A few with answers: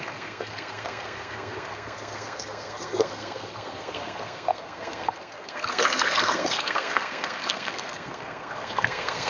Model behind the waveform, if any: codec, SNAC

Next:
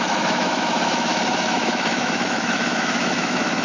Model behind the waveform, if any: autoencoder, DAC-VAE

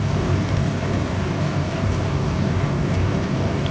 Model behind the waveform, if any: codec, DAC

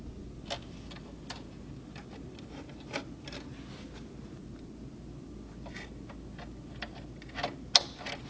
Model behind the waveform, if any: none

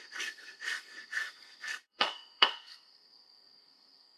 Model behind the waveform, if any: codec, SNAC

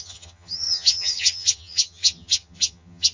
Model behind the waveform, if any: vocoder, HiFi-GAN